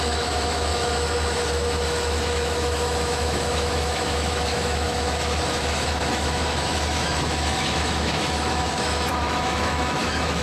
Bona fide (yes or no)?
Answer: no